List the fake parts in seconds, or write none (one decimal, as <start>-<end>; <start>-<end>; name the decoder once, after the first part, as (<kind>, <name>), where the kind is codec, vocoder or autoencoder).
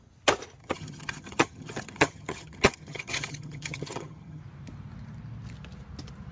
0.6-4.4 (vocoder, HiFi-GAN)